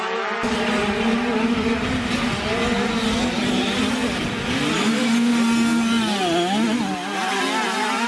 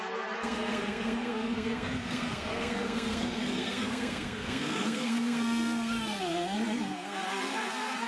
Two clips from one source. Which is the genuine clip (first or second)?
first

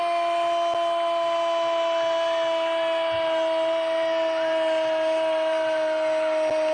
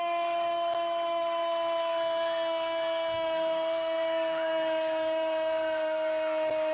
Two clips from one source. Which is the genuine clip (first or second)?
first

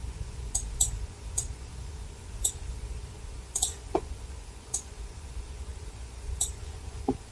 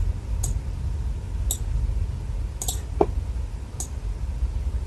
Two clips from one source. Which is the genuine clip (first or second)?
second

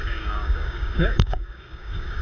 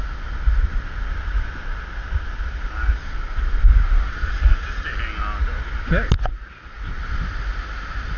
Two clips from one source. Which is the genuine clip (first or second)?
second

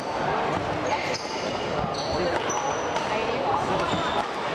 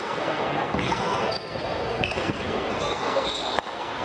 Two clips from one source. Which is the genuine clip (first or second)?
first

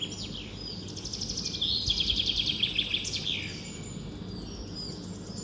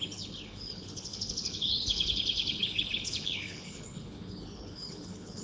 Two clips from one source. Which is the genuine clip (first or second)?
first